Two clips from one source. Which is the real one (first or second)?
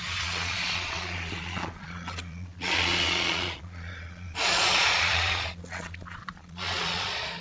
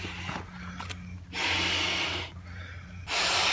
second